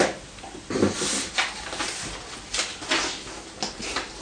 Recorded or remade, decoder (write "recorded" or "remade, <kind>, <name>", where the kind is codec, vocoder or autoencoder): recorded